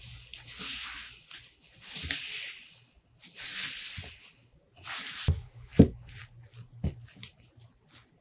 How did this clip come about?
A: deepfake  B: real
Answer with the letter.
B